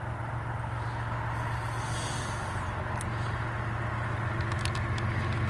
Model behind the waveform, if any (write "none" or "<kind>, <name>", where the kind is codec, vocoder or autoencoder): none